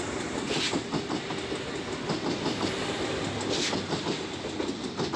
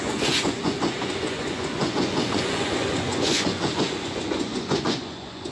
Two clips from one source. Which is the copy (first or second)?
second